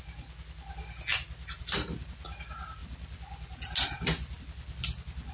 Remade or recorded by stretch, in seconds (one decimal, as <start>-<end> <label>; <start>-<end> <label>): 0.0-5.3 recorded